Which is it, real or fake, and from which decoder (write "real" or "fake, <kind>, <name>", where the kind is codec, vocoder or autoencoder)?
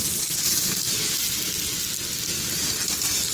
real